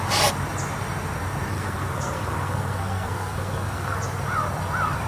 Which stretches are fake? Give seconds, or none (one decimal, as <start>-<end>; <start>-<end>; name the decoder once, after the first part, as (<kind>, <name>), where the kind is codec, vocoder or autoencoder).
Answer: 1.5-4.0 (codec, SNAC)